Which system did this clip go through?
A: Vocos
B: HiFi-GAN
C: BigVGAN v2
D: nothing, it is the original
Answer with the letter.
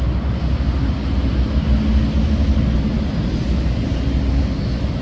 D